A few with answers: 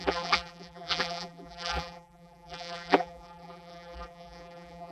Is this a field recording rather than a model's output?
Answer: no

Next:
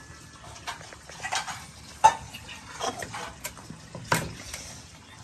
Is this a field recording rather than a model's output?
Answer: yes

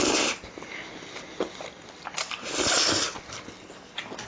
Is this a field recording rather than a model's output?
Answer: yes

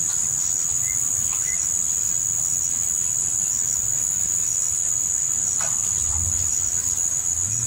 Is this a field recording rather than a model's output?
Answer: yes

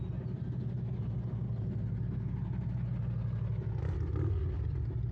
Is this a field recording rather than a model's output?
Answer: yes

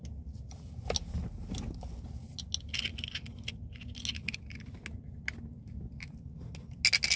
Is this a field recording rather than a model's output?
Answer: yes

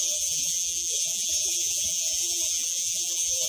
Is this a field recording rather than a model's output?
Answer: no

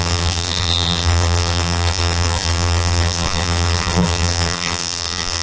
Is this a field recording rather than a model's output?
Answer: no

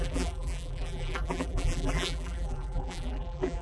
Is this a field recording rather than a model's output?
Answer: no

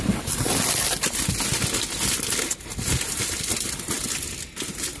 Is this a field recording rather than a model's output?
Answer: yes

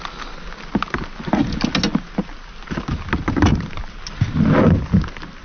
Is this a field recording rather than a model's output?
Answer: yes